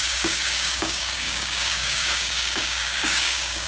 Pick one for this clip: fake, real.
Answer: fake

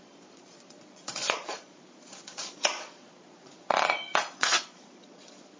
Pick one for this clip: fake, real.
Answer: fake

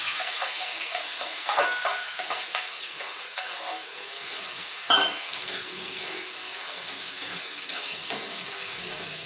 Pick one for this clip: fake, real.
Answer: fake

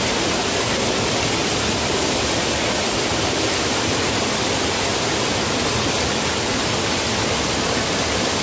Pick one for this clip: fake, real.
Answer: real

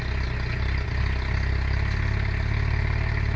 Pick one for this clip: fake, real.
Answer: real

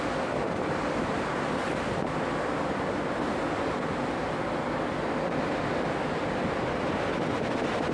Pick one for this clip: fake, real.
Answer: real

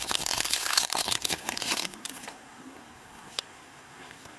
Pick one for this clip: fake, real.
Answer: fake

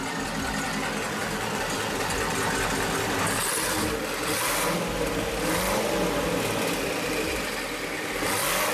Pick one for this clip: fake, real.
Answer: real